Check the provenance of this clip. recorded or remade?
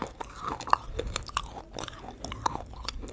recorded